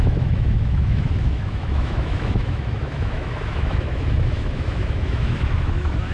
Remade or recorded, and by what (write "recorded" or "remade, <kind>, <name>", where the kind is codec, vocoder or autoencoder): remade, autoencoder, DAC-VAE